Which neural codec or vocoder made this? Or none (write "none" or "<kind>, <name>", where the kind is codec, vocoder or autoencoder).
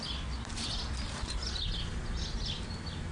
none